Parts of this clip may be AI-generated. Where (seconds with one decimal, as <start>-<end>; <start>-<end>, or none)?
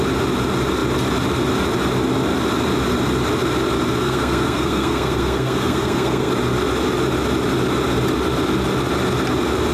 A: 4.0-6.3